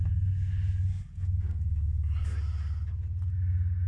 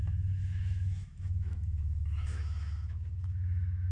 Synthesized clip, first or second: second